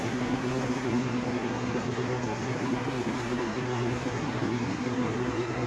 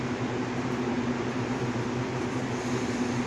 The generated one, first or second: first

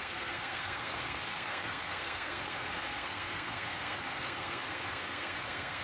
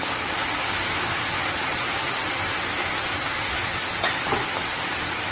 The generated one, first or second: first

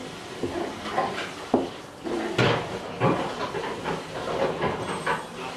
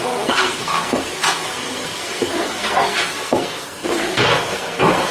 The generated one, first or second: second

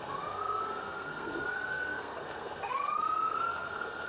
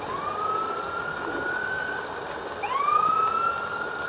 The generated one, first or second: first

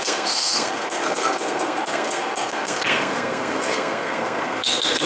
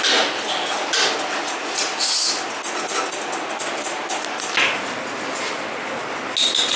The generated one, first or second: first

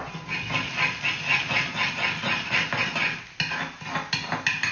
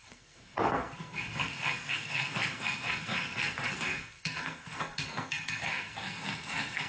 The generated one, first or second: second